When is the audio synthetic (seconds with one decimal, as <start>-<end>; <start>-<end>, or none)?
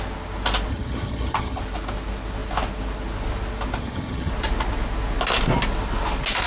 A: 0.7-1.6; 3.8-4.3